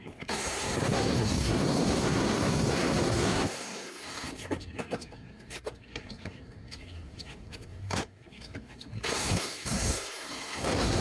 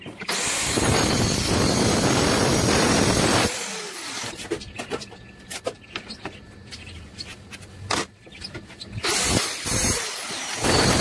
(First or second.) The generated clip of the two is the first